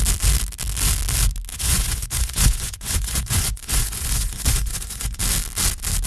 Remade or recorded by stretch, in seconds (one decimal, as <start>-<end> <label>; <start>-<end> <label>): 0.0-1.5 recorded; 1.5-5.2 remade; 5.2-6.1 recorded

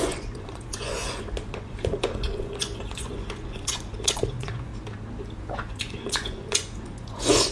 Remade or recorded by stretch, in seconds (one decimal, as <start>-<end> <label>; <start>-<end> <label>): 0.0-4.7 remade; 4.7-5.4 recorded; 5.4-7.5 remade

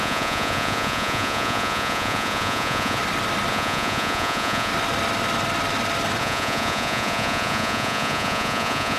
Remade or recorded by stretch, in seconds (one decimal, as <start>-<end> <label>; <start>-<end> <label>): 0.0-3.0 remade; 3.0-3.5 recorded; 3.5-4.7 remade; 4.7-6.2 recorded; 6.2-9.0 remade